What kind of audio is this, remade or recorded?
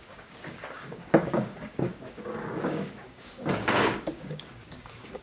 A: remade